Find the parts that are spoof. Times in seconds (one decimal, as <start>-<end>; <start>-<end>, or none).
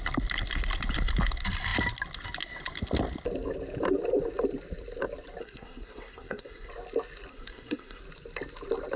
5.4-6.7; 7.3-8.0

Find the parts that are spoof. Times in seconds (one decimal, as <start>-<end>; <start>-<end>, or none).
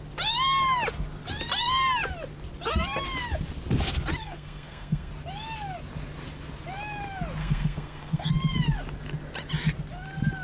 4.2-5.1; 7.4-8.3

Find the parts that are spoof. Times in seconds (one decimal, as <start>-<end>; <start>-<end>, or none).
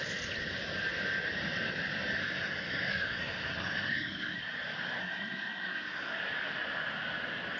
2.2-4.4; 5.0-6.2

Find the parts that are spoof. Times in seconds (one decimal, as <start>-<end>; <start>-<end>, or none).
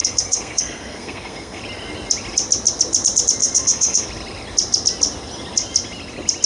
0.0-1.6; 3.4-4.1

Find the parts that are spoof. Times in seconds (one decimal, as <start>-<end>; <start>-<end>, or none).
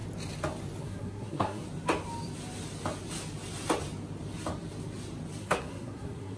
0.8-1.6; 5.4-6.4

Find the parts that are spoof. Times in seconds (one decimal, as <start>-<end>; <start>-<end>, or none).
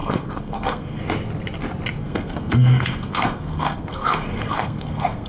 0.0-1.0; 2.0-5.3